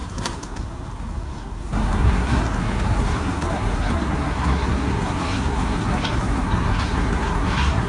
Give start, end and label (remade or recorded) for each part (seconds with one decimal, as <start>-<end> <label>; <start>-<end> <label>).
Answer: 0.0-7.9 remade